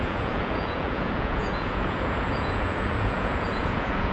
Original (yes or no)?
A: no